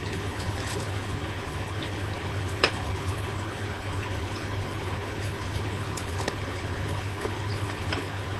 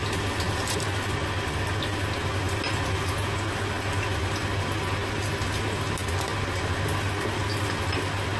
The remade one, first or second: first